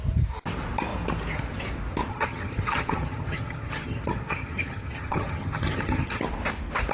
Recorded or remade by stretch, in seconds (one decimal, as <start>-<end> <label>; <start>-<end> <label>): 0.0-2.1 recorded; 2.1-6.2 remade; 6.2-6.9 recorded

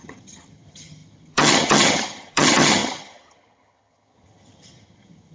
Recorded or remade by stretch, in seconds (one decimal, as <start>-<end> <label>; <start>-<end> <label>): 0.0-5.3 remade